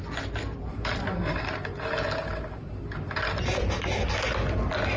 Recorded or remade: recorded